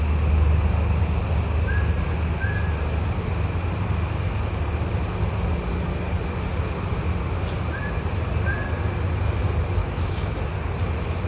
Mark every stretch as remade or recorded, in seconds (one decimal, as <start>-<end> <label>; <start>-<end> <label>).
0.0-9.8 recorded; 9.8-10.3 remade; 10.3-11.3 recorded